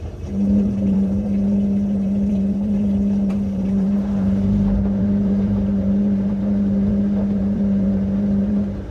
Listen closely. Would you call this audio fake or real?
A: fake